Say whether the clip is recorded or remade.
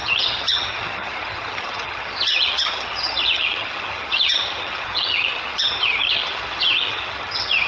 remade